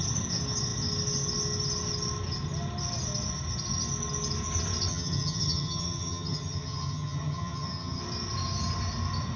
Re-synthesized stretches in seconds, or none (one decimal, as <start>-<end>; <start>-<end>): 4.9-8.0